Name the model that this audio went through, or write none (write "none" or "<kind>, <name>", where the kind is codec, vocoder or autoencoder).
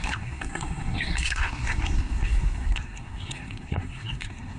codec, SNAC